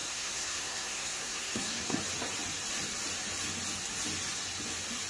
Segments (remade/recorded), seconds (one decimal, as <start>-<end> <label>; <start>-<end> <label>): 0.0-2.0 remade; 2.0-5.1 recorded